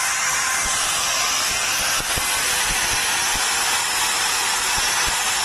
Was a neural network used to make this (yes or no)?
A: no